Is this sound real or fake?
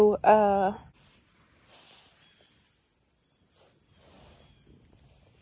real